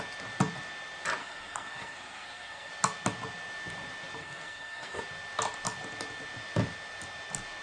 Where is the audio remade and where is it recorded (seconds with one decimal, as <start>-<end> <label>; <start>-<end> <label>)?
0.0-1.2 recorded; 1.2-2.7 remade; 2.7-4.2 recorded; 4.2-5.0 remade; 5.0-7.6 recorded